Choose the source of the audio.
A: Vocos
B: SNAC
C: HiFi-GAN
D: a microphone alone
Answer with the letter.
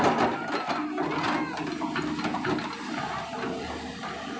D